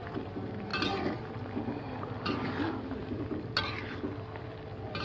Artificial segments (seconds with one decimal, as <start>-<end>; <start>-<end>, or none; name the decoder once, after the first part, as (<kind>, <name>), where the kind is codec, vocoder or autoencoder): none